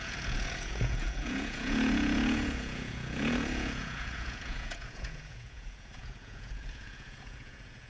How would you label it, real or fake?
fake